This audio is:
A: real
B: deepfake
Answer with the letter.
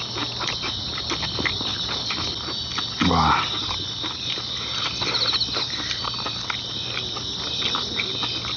A